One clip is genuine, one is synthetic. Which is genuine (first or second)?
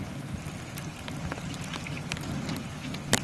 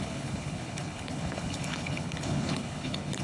first